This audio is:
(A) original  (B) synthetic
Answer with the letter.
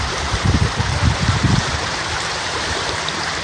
B